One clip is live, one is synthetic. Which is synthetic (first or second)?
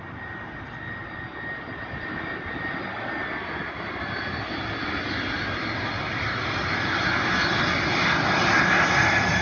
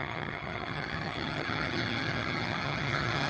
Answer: second